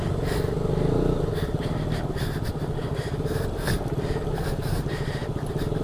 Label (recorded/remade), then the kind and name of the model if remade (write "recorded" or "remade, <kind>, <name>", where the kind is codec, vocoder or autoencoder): recorded